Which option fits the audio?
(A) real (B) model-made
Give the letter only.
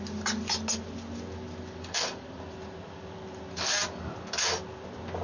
A